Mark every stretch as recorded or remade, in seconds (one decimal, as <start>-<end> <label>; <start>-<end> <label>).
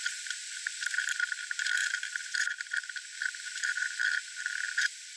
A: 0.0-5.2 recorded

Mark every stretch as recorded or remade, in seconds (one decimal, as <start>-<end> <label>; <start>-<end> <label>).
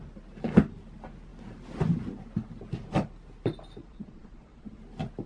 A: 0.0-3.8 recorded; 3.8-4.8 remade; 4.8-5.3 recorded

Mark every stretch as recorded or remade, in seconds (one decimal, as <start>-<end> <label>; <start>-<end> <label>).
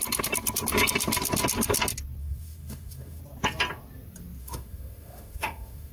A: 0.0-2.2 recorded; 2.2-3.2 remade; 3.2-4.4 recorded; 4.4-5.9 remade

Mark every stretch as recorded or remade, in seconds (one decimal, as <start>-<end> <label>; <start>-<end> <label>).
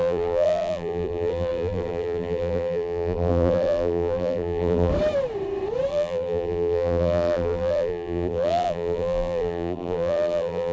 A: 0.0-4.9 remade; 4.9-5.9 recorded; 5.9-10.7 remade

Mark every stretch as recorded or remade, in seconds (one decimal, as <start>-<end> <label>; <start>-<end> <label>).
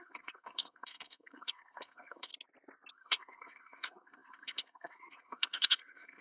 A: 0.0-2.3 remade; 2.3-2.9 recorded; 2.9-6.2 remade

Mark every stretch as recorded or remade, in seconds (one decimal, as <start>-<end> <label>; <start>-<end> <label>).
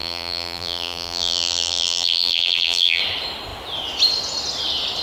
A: 0.0-3.0 remade; 3.0-5.0 recorded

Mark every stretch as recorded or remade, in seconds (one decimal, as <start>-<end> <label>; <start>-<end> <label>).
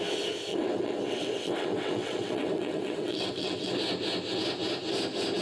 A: 0.0-0.5 recorded; 0.5-3.7 remade; 3.7-5.4 recorded